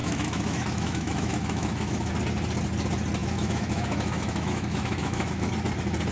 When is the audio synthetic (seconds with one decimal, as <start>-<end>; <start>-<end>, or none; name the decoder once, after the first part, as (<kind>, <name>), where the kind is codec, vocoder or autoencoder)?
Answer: 0.0-2.1 (autoencoder, DAC-VAE); 3.2-5.5